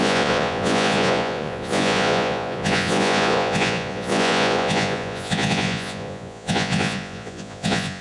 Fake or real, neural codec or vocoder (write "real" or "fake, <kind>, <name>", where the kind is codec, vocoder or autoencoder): fake, vocoder, Vocos